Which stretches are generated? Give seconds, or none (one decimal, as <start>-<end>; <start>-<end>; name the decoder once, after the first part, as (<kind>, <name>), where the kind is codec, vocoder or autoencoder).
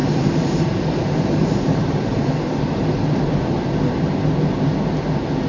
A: 0.0-2.1 (vocoder, BigVGAN v2)